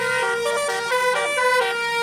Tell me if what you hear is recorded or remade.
recorded